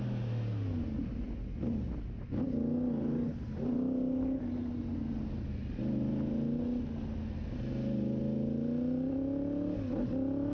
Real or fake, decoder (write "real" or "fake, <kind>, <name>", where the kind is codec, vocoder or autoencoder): real